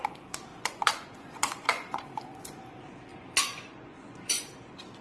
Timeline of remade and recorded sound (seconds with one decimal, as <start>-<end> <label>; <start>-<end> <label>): 0.0-0.5 recorded; 0.5-2.6 remade; 2.6-3.1 recorded; 3.1-4.5 remade; 4.5-5.0 recorded